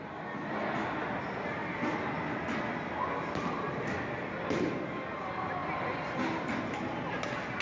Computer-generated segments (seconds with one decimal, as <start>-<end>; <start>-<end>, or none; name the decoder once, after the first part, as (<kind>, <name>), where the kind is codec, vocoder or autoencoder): none

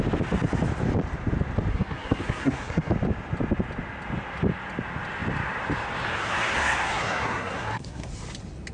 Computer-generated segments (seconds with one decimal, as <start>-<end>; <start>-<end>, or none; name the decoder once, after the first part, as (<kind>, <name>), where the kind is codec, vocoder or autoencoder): 1.7-2.9 (codec, SNAC); 6.2-8.1

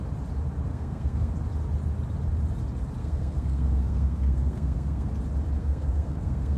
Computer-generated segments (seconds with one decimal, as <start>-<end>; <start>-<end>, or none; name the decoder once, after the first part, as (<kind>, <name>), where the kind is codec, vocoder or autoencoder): 0.7-1.3 (codec, SNAC); 3.0-5.1; 5.6-6.6

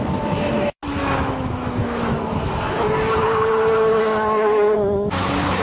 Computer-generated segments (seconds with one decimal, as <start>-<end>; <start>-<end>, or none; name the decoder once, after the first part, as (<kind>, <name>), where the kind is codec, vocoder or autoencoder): 0.0-5.6 (autoencoder, DAC-VAE)

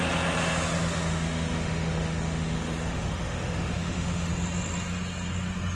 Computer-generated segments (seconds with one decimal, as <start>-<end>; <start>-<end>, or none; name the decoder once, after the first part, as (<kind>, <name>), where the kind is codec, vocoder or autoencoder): 0.9-4.3 (autoencoder, DAC-VAE)

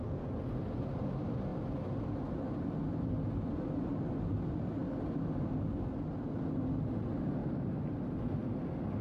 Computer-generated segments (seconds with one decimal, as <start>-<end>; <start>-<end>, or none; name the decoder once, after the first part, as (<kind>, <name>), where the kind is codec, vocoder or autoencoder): 4.8-5.5 (vocoder, BigVGAN v2); 7.4-7.9